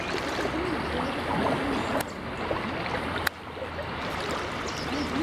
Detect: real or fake real